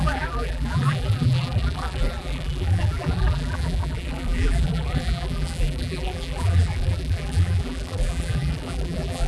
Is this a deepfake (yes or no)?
yes